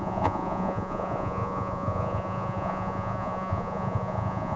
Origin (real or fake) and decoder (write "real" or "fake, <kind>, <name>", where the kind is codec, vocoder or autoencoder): fake, vocoder, Vocos